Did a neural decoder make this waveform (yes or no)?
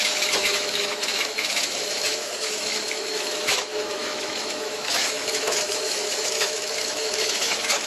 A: yes